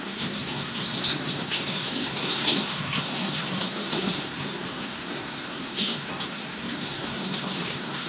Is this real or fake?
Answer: fake